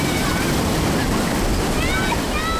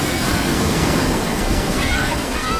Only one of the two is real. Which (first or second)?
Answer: first